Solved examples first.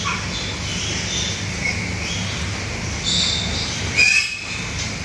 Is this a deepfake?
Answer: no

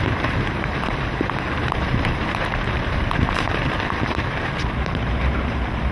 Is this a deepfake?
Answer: yes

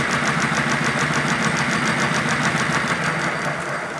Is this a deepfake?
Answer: no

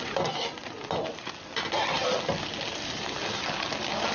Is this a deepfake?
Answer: no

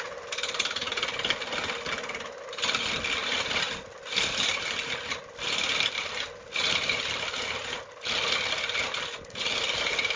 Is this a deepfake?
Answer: no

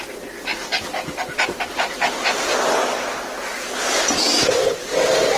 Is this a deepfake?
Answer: no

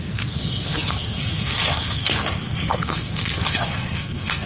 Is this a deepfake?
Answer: yes